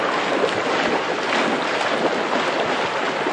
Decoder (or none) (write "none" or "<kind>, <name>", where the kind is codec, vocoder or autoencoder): none